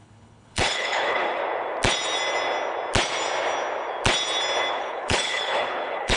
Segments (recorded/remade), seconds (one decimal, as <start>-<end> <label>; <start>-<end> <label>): 0.0-1.4 remade; 1.4-4.7 recorded; 4.7-6.2 remade